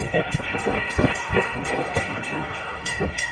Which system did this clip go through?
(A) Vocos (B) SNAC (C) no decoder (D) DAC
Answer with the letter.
B